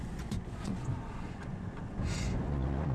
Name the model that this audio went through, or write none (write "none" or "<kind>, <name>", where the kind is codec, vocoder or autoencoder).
vocoder, Vocos